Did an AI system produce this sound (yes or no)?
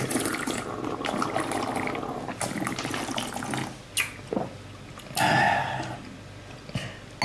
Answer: no